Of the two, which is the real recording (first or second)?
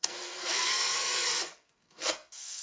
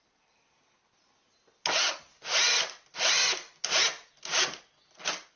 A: second